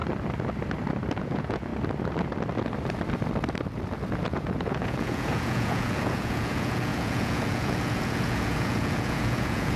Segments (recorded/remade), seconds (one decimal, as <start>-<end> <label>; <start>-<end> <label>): 0.0-1.2 recorded; 1.2-1.7 remade; 1.7-4.2 recorded; 4.2-9.8 remade